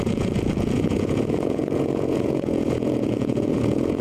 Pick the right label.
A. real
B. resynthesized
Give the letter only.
B